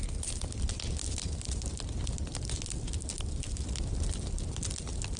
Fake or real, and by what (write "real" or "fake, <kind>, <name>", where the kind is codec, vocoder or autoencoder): real